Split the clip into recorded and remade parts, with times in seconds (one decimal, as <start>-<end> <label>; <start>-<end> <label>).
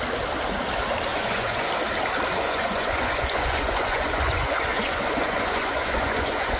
0.0-1.1 recorded; 1.1-1.7 remade; 1.7-2.3 recorded; 2.3-6.6 remade